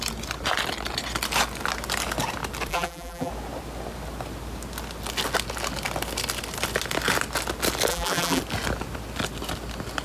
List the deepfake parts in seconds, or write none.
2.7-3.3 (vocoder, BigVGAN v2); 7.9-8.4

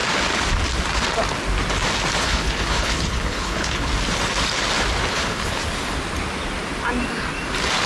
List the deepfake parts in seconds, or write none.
2.2-3.9 (codec, HILCodec); 5.1-5.6

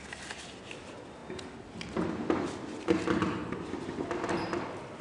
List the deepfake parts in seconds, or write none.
none

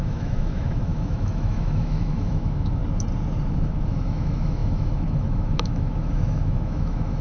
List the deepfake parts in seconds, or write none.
0.0-2.8 (autoencoder, DAC-VAE); 3.5-7.2

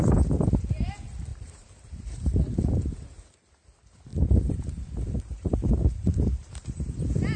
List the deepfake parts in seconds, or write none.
1.3-3.4 (vocoder, BigVGAN v2); 4.1-7.0

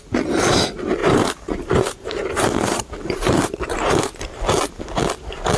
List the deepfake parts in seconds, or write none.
1.0-4.4 (vocoder, BigVGAN v2)